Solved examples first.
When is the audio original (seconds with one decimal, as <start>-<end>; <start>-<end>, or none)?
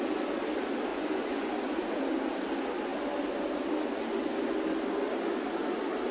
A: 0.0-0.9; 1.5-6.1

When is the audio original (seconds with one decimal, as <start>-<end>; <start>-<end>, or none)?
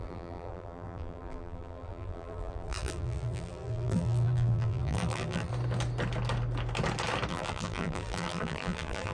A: 5.5-7.3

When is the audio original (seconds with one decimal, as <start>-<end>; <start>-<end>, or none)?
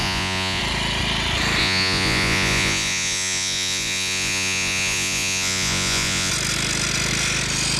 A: 0.6-1.6; 6.3-7.8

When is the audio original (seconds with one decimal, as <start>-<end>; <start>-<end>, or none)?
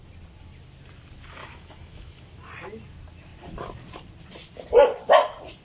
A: 0.0-1.4; 2.2-5.6